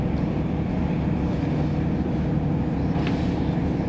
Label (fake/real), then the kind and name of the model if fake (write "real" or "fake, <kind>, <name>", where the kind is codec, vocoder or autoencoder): real